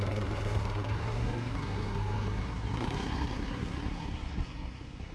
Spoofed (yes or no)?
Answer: yes